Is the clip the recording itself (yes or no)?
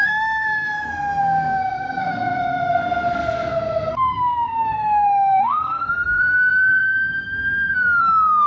no